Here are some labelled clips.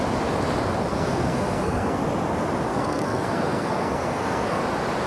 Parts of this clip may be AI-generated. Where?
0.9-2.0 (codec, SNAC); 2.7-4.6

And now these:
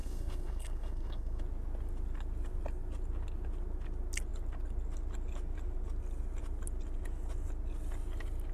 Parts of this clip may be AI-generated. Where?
0.0-1.4 (codec, SNAC)

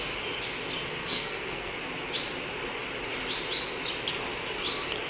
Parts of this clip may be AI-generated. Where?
1.0-1.7 (codec, SNAC)

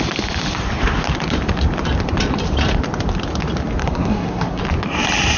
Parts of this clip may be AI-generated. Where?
3.8-4.6 (codec, SNAC)

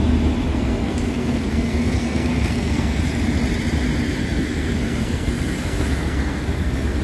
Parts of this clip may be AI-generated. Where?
0.5-3.0 (codec, SNAC); 4.2-7.0